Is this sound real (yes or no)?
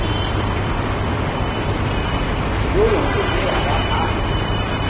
no